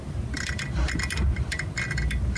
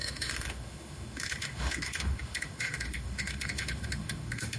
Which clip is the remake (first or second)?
second